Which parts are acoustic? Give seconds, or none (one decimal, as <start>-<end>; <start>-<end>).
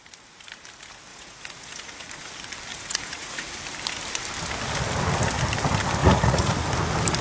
0.0-1.1; 2.3-2.7; 3.5-6.0; 6.6-7.2